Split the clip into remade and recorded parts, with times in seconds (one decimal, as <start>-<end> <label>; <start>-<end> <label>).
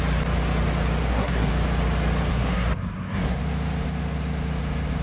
0.0-1.0 recorded; 1.0-1.5 remade; 1.5-2.3 recorded; 2.3-3.4 remade; 3.4-5.0 recorded